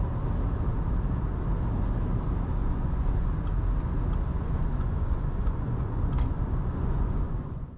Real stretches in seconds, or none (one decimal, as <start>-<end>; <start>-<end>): 0.0-2.6; 3.3-4.3